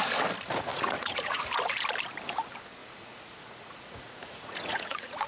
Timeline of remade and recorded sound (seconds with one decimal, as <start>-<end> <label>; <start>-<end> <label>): 0.0-0.7 recorded; 0.7-1.4 remade; 1.4-2.8 recorded; 2.8-5.3 remade